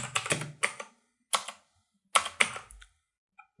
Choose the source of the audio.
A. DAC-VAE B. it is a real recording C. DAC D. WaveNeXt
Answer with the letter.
B